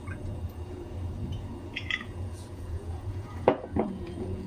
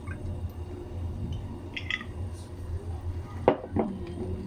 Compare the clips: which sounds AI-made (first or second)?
first